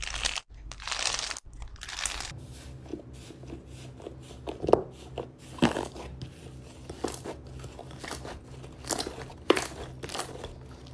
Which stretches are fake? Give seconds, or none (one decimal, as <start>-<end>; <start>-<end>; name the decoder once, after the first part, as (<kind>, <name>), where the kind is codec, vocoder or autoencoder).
none